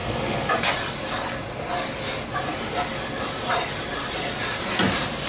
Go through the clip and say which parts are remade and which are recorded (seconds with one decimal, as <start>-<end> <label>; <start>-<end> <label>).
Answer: 0.0-0.5 remade; 0.5-5.3 recorded